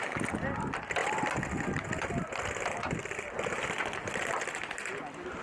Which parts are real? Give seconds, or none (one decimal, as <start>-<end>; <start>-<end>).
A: 0.0-5.4